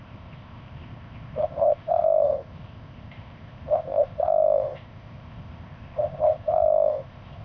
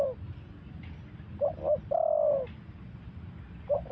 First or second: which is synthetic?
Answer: first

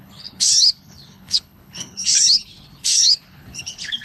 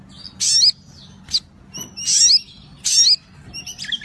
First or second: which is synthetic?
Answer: first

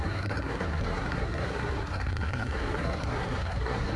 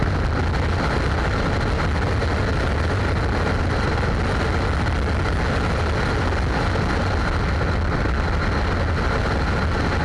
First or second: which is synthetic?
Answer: first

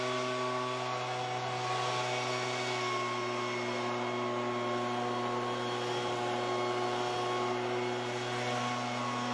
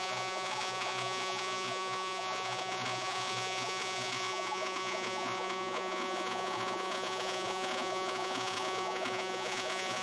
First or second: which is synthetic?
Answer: second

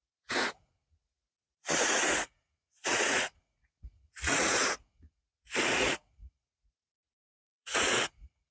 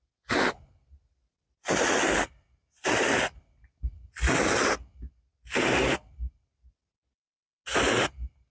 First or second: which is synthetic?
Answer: first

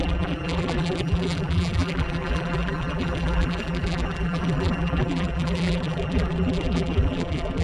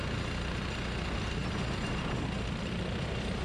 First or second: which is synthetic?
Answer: first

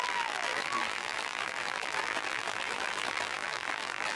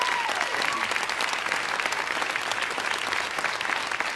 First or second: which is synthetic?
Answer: first